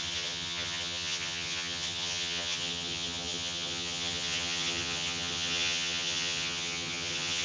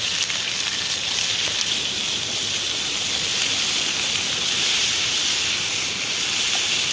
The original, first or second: second